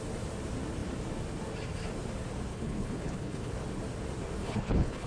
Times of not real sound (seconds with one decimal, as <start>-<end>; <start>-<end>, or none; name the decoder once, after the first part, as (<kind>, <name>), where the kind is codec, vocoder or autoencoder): 2.5-3.5 (codec, HILCodec); 4.4-5.1